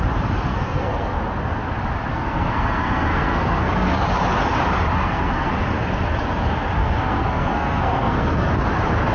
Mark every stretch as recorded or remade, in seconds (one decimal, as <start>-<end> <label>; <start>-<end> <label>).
0.0-0.5 recorded; 0.5-1.2 remade; 1.2-2.1 recorded; 2.1-4.0 remade; 4.0-5.0 recorded; 5.0-5.5 remade; 5.5-6.8 recorded; 6.8-8.5 remade; 8.5-9.1 recorded